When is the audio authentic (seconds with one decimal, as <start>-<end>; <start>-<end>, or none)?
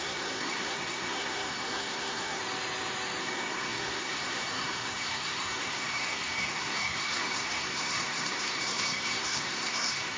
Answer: 2.4-3.2